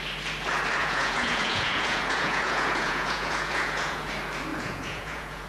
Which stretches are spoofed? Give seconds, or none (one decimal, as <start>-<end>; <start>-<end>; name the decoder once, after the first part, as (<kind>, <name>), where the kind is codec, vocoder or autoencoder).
0.8-4.1 (vocoder, Vocos); 4.5-5.5